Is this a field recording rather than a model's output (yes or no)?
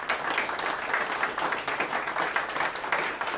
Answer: yes